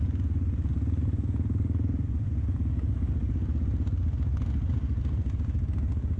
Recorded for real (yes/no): yes